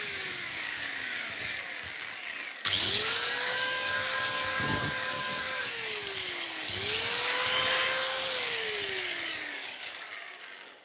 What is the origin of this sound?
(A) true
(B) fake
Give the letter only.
B